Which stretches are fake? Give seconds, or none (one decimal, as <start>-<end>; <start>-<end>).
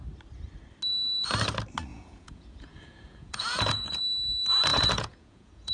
1.9-4.0; 4.7-5.7